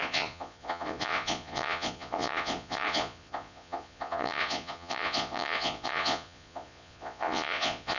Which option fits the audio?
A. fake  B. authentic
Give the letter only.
A